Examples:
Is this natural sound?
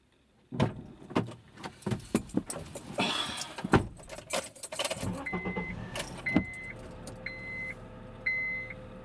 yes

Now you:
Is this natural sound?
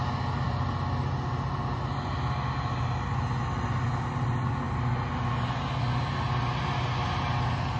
yes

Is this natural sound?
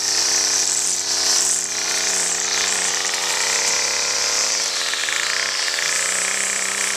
no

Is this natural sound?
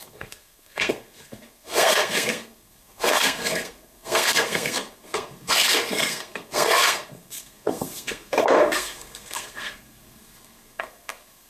no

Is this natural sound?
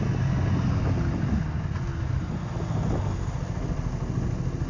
yes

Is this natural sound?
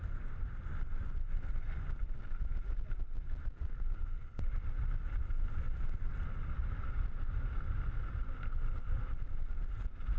yes